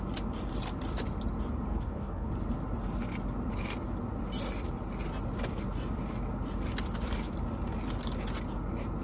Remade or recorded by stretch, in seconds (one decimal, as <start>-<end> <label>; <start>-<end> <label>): 0.0-1.7 recorded; 1.7-2.3 remade; 2.3-9.0 recorded